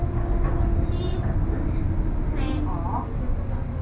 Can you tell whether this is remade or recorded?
recorded